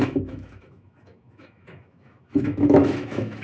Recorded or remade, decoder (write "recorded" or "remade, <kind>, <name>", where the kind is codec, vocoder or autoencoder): remade, autoencoder, DAC-VAE